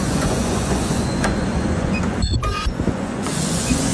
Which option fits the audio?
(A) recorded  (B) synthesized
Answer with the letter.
B